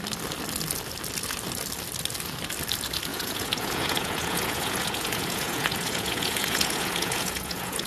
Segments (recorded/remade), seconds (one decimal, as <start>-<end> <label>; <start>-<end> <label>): 0.0-3.1 recorded; 3.1-7.9 remade